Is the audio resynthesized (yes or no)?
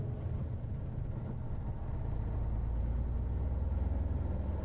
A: no